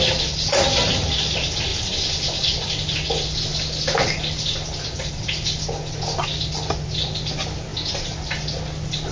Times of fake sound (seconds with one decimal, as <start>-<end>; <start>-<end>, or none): none